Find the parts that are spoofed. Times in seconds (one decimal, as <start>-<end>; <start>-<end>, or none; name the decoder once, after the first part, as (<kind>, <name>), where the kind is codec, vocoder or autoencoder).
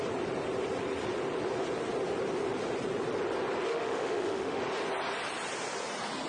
3.7-4.6 (autoencoder, DAC-VAE)